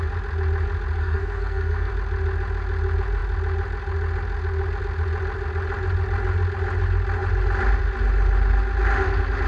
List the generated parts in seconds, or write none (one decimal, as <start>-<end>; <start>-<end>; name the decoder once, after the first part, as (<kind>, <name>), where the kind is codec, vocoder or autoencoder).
1.0-1.9 (codec, SNAC)